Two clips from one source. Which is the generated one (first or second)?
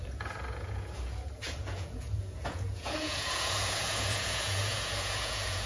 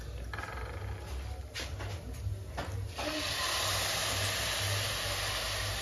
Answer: first